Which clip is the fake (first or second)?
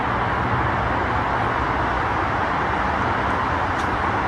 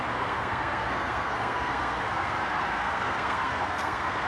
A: second